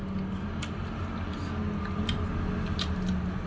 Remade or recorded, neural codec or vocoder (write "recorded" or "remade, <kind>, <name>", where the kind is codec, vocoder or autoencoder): recorded